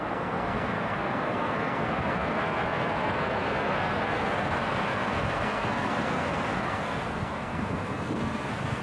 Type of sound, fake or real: fake